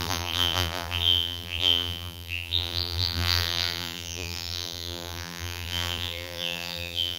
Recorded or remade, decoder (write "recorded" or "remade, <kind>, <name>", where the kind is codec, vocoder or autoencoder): remade, vocoder, BigVGAN v2